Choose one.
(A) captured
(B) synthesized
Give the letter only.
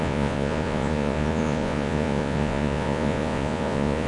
B